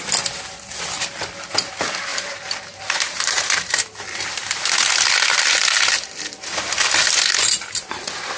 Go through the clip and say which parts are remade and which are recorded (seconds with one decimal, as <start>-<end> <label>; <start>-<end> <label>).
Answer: 0.0-2.1 recorded; 2.1-4.8 remade; 4.8-8.4 recorded